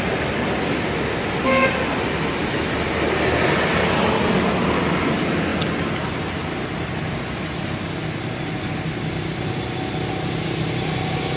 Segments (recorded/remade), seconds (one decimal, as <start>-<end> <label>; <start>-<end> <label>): 0.0-11.4 recorded

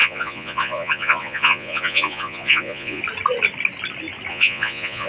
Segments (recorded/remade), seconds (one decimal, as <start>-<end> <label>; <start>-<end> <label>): 0.0-3.0 remade; 3.0-4.3 recorded; 4.3-5.1 remade

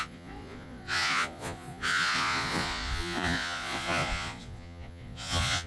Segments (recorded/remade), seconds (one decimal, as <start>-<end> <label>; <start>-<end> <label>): 0.0-5.7 remade